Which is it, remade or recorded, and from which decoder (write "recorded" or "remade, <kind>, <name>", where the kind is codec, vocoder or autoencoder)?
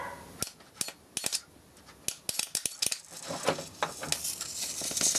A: recorded